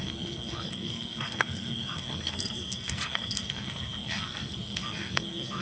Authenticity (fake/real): fake